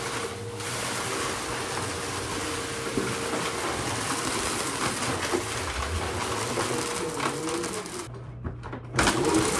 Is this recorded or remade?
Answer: recorded